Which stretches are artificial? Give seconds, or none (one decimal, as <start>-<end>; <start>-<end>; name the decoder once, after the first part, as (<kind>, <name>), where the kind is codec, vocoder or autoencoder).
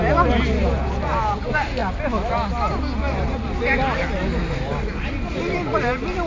none